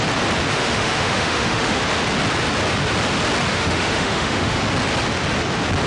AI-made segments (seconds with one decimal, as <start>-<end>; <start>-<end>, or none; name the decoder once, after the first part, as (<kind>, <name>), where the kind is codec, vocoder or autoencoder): 0.5-1.8 (autoencoder, DAC-VAE); 3.5-4.6